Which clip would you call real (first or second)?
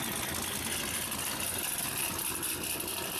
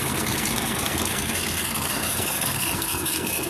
first